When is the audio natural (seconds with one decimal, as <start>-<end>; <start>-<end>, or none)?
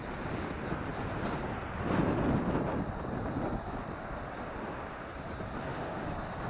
0.0-5.7